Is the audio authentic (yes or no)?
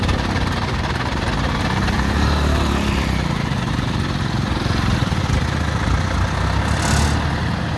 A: yes